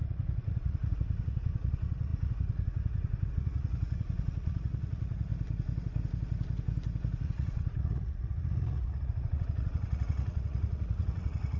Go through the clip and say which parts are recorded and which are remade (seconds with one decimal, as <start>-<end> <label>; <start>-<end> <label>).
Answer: 0.0-5.3 remade; 5.3-7.2 recorded; 7.2-11.6 remade